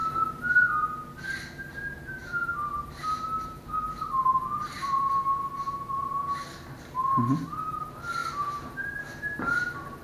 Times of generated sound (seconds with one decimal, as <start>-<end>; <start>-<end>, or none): 0.0-0.5; 2.2-4.0; 8.2-8.9

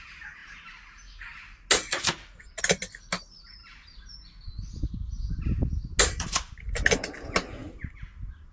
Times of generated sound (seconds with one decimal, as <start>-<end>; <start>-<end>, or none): none

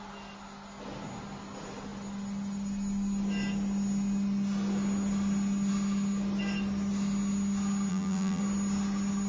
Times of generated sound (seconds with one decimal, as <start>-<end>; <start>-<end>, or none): 7.9-8.4

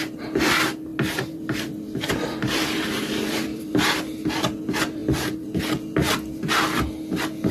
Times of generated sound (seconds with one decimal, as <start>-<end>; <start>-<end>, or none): 0.9-4.0; 5.0-5.6; 6.0-6.6

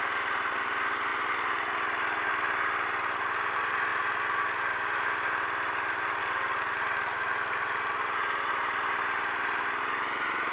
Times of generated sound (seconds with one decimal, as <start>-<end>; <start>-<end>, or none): none